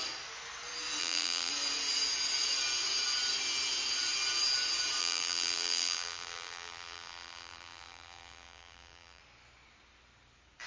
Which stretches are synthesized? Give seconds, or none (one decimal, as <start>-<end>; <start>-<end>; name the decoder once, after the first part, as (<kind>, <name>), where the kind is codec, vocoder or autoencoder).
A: 1.0-1.5 (vocoder, BigVGAN v2); 5.0-9.2